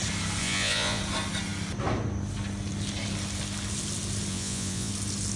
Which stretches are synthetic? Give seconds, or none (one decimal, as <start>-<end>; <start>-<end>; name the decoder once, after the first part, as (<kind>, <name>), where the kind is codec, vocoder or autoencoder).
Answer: 0.4-1.0 (vocoder, Vocos); 4.3-4.9